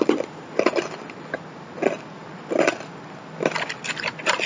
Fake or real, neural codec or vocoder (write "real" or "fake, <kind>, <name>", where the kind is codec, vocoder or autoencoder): real